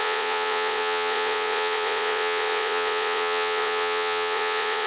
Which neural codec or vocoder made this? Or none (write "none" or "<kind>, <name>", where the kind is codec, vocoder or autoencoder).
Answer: vocoder, Vocos